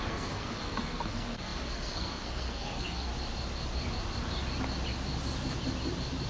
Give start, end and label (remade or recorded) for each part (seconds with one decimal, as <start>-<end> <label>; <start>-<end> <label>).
0.0-3.1 remade; 3.1-6.3 recorded